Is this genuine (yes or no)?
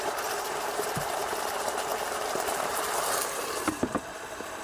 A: no